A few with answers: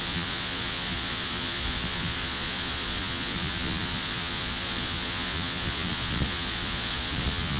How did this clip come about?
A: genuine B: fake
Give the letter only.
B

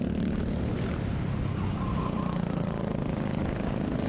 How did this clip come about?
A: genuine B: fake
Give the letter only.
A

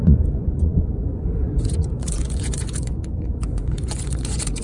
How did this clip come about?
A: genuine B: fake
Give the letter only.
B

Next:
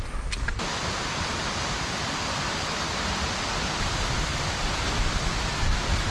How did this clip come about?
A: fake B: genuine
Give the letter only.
B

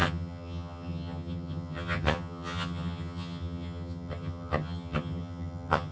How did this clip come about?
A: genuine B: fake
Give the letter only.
B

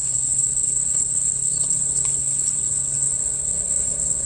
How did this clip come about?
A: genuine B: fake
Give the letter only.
B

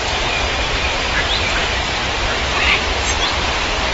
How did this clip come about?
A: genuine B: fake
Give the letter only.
B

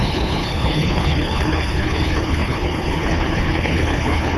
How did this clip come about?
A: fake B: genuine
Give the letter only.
A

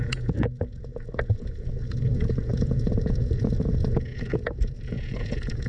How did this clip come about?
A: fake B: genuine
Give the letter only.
A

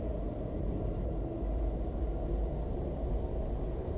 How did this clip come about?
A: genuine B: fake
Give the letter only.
A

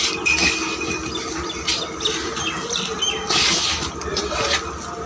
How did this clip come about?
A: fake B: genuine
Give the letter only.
B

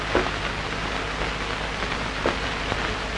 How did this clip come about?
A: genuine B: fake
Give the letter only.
A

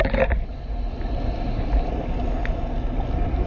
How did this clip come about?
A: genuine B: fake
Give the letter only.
A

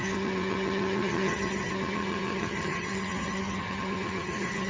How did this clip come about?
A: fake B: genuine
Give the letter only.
A